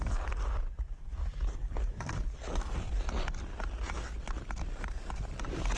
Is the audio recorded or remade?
recorded